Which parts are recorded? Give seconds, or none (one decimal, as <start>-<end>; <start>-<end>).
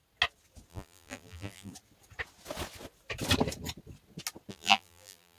0.0-0.7; 1.7-4.5